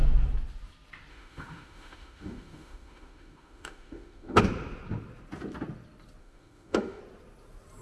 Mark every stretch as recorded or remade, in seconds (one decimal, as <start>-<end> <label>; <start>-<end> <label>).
0.0-1.1 recorded; 1.1-4.4 remade; 4.4-6.2 recorded; 6.2-7.0 remade; 7.0-7.8 recorded